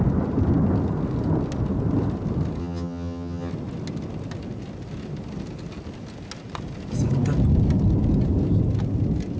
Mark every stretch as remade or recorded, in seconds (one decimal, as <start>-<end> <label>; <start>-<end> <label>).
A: 0.0-2.6 recorded; 2.6-3.5 remade; 3.5-9.4 recorded